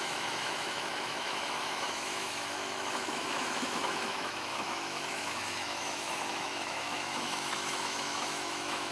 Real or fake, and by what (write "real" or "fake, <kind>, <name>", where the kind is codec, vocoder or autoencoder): fake, autoencoder, DAC-VAE